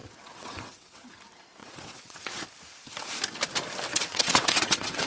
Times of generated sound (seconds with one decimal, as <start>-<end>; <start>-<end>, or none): 0.0-1.1; 1.6-2.2; 3.9-5.1